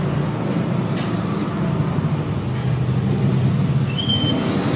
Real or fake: real